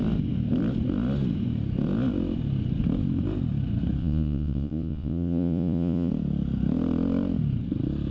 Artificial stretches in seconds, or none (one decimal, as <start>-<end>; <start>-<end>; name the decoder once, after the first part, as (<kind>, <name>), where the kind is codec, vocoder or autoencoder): 4.0-6.1 (vocoder, Vocos)